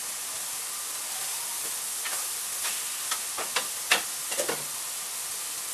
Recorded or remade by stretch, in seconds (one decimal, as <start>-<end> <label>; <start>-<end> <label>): 0.0-5.7 recorded